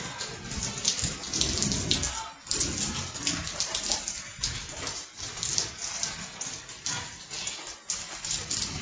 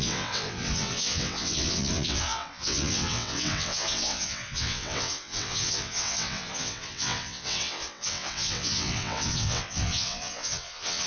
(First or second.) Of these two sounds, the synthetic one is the second